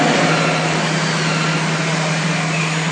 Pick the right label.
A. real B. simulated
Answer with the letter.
A